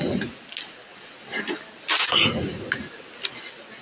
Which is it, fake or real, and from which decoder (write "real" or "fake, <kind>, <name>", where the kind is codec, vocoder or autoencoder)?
real